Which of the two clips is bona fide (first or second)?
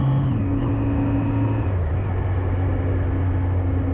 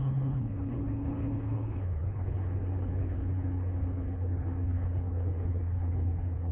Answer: first